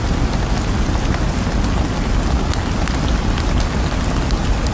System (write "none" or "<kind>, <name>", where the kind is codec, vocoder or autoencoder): none